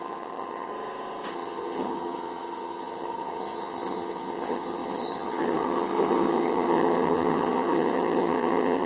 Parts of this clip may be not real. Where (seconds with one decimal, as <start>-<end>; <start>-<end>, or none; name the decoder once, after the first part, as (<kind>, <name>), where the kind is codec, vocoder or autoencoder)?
0.0-0.7 (vocoder, HiFi-GAN); 1.3-8.9